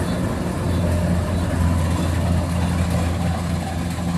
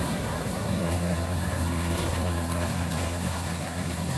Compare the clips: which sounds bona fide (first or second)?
first